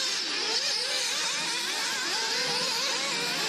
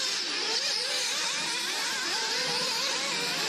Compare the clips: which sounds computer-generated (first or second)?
second